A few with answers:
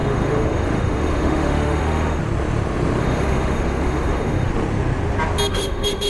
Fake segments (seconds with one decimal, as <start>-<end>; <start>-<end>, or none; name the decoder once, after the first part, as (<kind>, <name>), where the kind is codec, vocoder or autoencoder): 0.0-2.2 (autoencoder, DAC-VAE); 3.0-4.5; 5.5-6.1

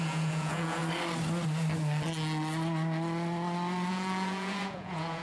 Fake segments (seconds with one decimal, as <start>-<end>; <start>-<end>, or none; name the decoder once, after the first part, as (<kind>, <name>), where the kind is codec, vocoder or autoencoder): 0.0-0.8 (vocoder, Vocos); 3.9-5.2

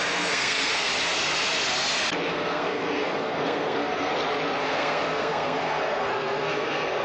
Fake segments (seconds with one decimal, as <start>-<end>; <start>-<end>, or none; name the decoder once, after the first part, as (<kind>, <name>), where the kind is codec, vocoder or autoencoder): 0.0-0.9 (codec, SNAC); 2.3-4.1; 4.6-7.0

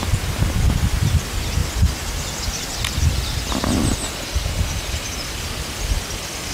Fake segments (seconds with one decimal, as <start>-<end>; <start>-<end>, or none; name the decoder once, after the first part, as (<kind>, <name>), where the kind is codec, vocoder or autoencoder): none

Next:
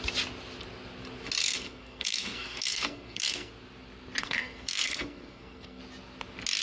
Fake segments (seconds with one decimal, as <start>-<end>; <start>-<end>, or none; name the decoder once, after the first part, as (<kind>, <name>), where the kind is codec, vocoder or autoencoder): 1.4-3.5 (codec, SNAC); 4.2-5.8

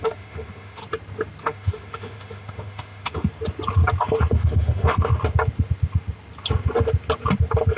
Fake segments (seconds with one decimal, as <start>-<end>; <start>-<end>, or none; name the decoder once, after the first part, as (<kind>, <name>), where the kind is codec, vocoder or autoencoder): 0.0-0.8 (autoencoder, DAC-VAE); 1.4-3.3; 4.3-5.1

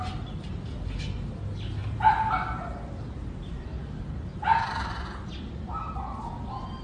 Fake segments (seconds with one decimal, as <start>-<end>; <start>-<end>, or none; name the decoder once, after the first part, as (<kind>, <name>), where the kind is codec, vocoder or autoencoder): none